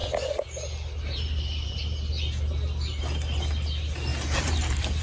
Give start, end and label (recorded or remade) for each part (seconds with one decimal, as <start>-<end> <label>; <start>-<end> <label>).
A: 0.0-4.1 recorded; 4.1-5.0 remade